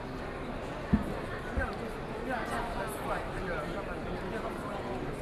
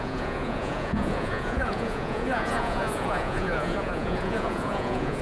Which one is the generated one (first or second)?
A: second